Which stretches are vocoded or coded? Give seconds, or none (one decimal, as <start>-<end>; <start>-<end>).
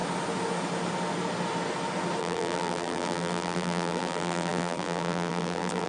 2.2-5.9